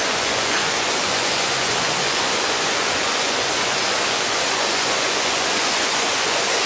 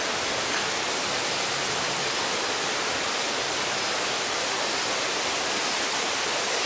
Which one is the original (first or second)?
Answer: second